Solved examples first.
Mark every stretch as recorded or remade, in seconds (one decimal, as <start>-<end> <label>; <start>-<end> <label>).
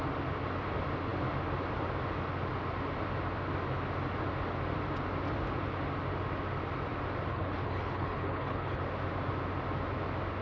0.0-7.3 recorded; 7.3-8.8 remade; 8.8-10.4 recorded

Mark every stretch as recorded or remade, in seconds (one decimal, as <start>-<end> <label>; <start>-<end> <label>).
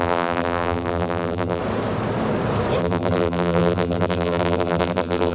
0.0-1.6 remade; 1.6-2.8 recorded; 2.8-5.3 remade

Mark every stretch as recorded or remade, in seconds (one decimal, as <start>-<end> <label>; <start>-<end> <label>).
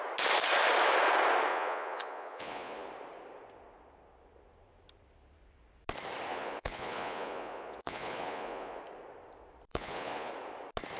0.0-1.5 recorded; 1.5-2.9 remade; 2.9-6.3 recorded; 6.3-8.8 remade; 8.8-9.7 recorded; 9.7-10.3 remade; 10.3-11.0 recorded